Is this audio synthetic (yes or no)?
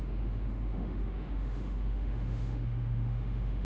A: yes